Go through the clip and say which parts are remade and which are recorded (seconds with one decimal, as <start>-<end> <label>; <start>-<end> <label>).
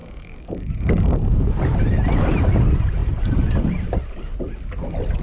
0.0-1.6 remade; 1.6-5.2 recorded